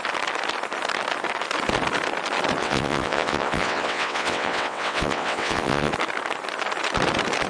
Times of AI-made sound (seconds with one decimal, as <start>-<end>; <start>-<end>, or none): 2.6-5.9